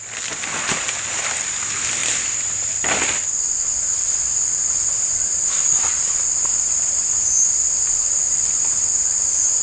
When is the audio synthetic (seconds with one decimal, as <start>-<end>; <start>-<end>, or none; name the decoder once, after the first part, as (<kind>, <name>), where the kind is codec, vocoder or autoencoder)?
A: none